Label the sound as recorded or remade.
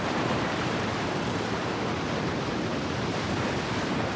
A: remade